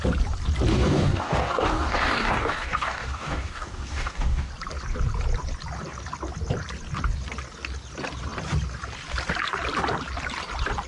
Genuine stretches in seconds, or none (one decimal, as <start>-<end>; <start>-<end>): 0.0-0.7; 4.5-10.9